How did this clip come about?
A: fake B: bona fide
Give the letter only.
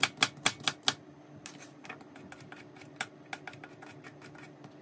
B